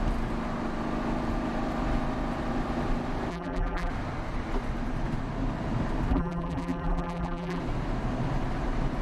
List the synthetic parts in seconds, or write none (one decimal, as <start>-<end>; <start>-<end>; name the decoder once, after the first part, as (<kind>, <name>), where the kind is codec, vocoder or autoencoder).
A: 3.3-3.9 (vocoder, BigVGAN v2); 6.1-7.6